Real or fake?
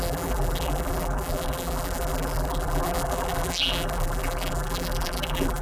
fake